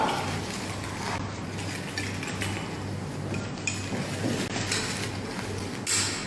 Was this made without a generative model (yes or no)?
yes